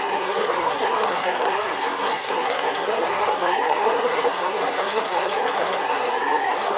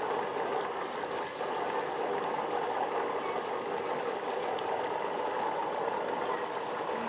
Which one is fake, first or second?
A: first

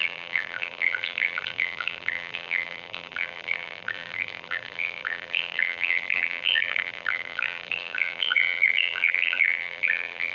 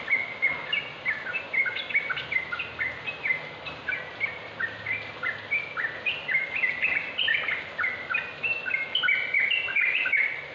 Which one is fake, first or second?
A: first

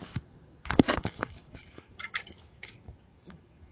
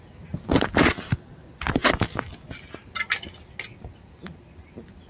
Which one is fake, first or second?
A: first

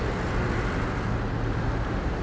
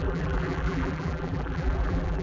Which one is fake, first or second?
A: second